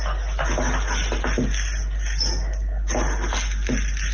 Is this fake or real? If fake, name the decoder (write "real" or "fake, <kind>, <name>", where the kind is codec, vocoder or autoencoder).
real